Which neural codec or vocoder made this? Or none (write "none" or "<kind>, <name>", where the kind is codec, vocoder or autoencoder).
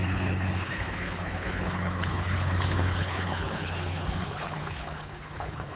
codec, HILCodec